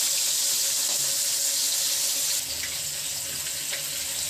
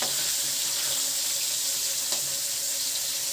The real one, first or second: first